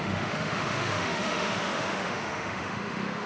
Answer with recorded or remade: remade